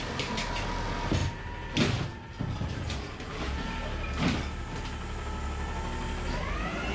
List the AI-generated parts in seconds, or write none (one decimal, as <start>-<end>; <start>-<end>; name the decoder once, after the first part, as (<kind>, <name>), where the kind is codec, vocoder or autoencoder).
none